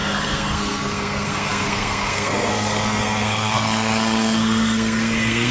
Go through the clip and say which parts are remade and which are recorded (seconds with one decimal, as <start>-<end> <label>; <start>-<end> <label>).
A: 0.0-5.5 remade